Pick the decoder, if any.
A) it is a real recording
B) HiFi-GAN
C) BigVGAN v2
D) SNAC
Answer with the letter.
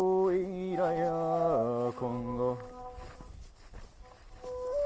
A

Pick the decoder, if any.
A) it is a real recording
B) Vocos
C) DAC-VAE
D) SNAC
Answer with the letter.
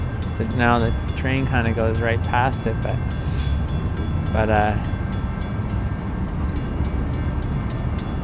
A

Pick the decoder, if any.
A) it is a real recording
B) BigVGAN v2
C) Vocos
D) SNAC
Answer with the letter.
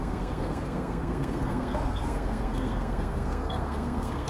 D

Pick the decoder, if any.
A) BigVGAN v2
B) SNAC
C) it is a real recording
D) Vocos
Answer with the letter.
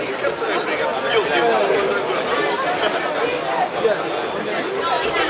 C